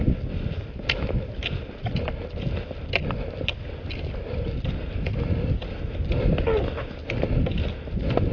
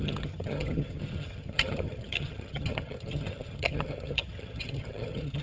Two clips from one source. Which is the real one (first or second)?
first